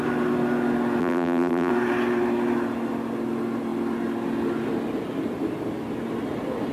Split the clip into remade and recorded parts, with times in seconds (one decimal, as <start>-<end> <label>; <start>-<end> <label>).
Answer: 0.0-1.0 recorded; 1.0-1.7 remade; 1.7-6.7 recorded